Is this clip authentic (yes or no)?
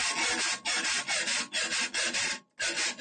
yes